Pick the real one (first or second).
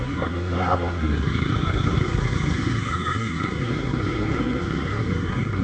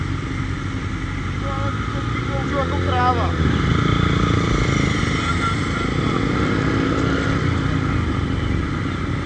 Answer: second